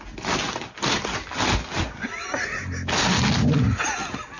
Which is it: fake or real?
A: real